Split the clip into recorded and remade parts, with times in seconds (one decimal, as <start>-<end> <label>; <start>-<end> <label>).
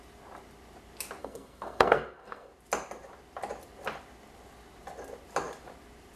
0.0-1.2 recorded; 1.2-2.5 remade; 2.5-6.2 recorded